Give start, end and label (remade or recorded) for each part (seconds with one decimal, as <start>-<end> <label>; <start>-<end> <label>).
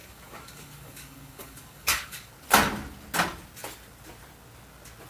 0.0-2.3 remade; 2.3-5.1 recorded